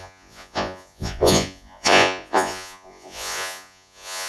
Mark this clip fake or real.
fake